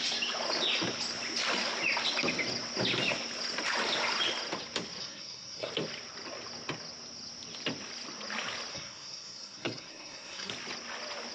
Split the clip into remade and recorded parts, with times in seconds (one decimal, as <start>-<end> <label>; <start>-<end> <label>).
0.0-5.0 recorded; 5.0-5.7 remade; 5.7-8.7 recorded; 8.7-10.5 remade; 10.5-11.3 recorded